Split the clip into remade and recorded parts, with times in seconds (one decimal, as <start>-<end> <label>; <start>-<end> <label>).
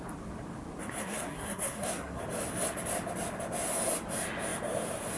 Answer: 0.0-1.0 recorded; 1.0-2.2 remade; 2.2-5.2 recorded